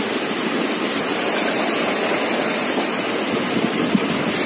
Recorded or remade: recorded